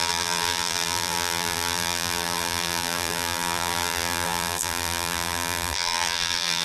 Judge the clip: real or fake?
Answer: fake